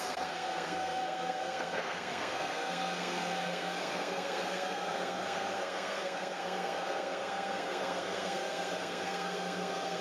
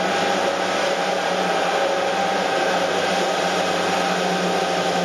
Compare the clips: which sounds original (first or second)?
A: second